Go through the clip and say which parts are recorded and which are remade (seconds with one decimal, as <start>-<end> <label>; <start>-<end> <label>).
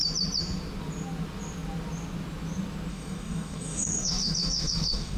0.0-2.9 recorded; 2.9-5.2 remade